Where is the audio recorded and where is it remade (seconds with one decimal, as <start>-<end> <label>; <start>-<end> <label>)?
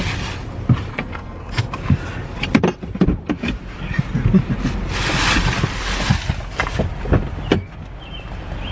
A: 0.0-0.9 recorded; 0.9-1.5 remade; 1.5-8.7 recorded